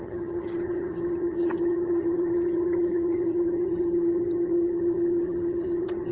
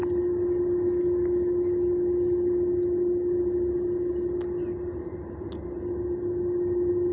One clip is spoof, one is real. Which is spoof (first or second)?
first